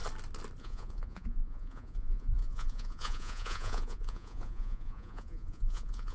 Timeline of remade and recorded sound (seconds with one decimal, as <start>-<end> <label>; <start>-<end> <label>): 0.0-0.6 recorded; 0.6-6.1 remade